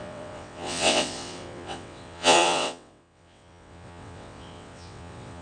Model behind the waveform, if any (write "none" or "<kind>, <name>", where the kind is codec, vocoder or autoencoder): vocoder, WaveNeXt